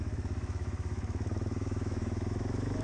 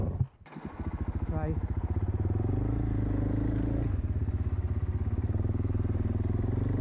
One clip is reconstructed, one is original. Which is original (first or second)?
second